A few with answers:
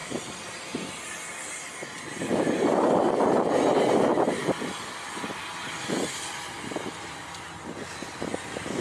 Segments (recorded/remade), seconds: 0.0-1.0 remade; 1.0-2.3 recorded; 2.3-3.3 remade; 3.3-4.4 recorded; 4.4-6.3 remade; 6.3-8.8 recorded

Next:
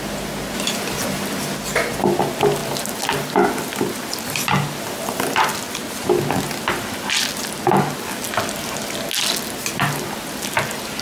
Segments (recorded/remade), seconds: 0.0-11.0 recorded

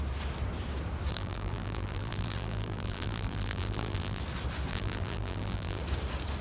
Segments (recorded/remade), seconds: 0.0-1.1 recorded; 1.1-4.2 remade; 4.2-4.7 recorded; 4.7-5.8 remade; 5.8-6.4 recorded

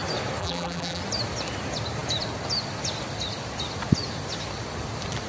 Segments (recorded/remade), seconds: 0.0-0.4 recorded; 0.4-1.0 remade; 1.0-5.3 recorded

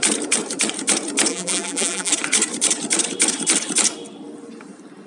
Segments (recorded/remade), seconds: 0.0-1.3 recorded; 1.3-2.1 remade; 2.1-5.1 recorded

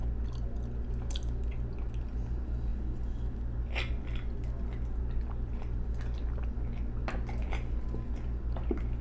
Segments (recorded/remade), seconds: 0.0-9.0 recorded

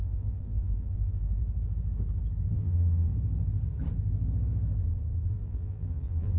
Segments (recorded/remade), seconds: 0.0-1.4 remade; 1.4-2.5 recorded; 2.5-3.1 remade; 3.1-5.3 recorded; 5.3-6.4 remade